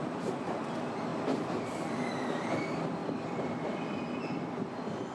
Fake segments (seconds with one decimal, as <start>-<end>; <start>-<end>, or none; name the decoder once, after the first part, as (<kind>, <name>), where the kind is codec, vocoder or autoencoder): 0.0-5.1 (vocoder, BigVGAN v2)